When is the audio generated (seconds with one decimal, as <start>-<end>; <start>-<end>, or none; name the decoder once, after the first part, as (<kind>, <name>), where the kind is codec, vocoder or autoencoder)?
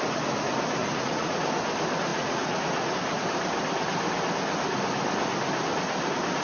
0.8-1.4 (vocoder, Vocos); 2.1-2.9